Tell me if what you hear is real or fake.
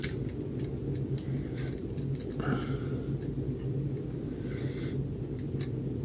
real